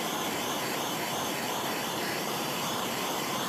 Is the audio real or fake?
fake